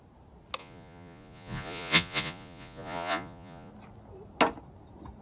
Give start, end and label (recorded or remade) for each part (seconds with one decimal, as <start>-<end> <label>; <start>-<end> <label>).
0.0-0.6 recorded; 0.6-3.7 remade; 3.7-5.2 recorded